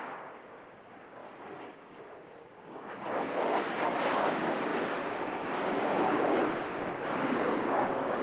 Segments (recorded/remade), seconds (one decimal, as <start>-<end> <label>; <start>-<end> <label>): 0.0-8.2 remade